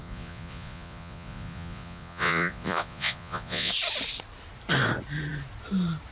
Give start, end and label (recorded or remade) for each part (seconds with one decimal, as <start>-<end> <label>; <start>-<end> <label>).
0.0-3.7 remade; 3.7-6.1 recorded